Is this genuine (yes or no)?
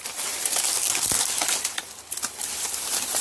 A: yes